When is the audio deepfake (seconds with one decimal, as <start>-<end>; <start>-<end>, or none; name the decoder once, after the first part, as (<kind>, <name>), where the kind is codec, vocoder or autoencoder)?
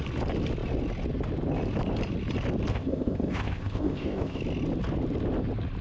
2.7-4.4 (codec, ZipCodec)